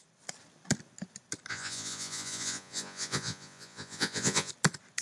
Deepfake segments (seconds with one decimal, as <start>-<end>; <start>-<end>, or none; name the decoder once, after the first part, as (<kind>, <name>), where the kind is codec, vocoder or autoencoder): 1.5-4.5 (vocoder, Vocos)

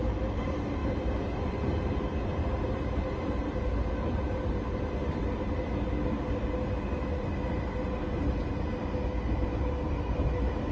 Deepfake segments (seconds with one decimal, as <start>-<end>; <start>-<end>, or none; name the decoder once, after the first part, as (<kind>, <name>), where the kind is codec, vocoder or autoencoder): none